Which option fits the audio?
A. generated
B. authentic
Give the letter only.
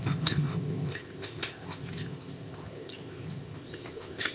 A